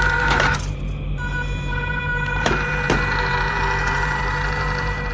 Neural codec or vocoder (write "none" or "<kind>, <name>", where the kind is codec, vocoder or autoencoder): vocoder, BigVGAN v2